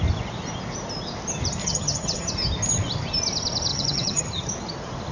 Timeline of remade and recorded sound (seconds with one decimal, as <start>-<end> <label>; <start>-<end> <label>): 0.0-1.6 recorded; 1.6-2.3 remade; 2.3-3.7 recorded; 3.7-4.5 remade; 4.5-5.1 recorded